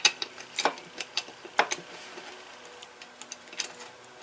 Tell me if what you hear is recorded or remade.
recorded